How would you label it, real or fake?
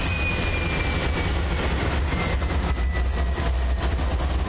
real